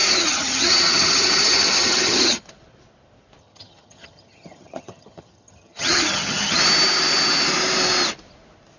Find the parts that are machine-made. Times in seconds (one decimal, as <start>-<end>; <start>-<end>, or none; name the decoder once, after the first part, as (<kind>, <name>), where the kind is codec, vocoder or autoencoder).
0.0-2.4 (vocoder, HiFi-GAN); 3.4-6.6